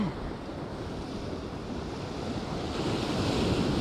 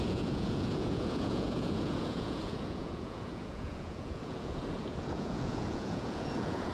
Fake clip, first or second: second